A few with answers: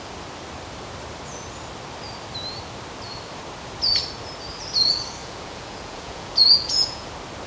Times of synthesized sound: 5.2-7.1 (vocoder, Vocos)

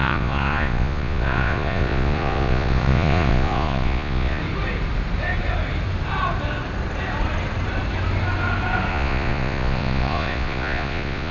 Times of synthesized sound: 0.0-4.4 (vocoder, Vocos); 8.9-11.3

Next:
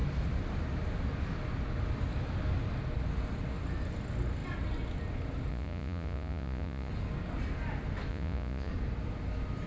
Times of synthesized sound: 5.5-6.9 (vocoder, Vocos); 8.1-8.7

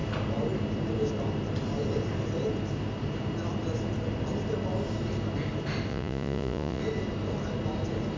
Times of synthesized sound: 5.9-6.8 (vocoder, Vocos)

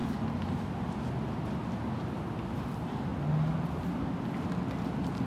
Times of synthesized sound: none